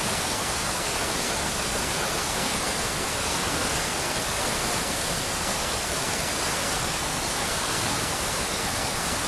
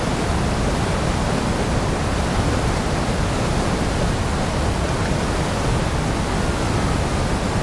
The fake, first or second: first